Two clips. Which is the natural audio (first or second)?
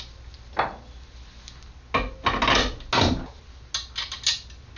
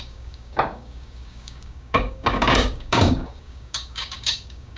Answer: first